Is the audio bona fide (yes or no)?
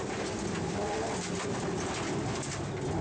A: yes